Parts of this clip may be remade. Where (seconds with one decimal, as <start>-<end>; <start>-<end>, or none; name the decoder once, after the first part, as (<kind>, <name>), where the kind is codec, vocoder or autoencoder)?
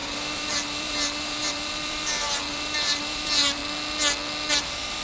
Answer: 0.0-3.6 (vocoder, BigVGAN v2); 4.5-5.0